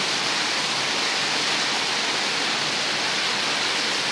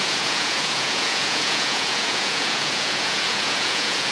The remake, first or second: second